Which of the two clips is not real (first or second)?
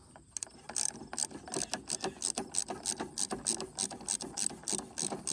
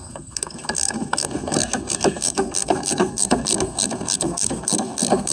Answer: second